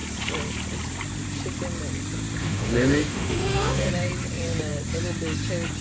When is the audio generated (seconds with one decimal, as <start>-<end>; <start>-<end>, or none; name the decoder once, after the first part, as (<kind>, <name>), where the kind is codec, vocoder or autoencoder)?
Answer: 2.4-3.9 (autoencoder, DAC-VAE)